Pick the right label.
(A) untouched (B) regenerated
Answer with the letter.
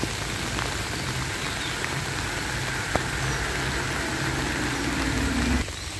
A